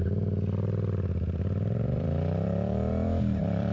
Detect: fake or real fake